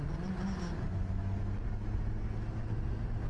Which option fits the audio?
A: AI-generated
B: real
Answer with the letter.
B